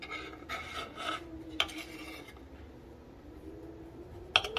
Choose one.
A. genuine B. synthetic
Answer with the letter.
A